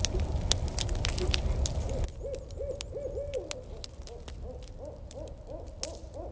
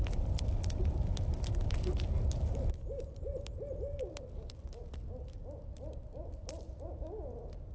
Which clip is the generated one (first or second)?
second